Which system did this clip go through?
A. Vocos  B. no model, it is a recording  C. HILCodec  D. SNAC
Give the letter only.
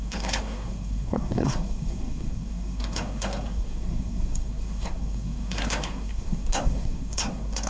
D